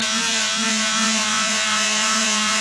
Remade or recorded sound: remade